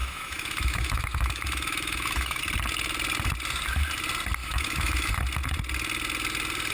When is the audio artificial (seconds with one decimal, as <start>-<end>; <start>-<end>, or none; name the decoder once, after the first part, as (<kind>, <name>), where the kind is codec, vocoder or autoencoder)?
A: 0.0-2.4 (autoencoder, DAC-VAE); 4.4-5.1